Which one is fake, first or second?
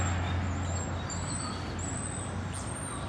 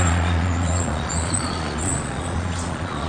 second